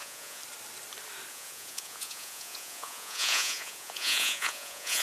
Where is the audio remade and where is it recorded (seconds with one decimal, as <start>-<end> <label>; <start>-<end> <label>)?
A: 0.0-0.4 remade; 0.4-1.3 recorded; 1.3-5.0 remade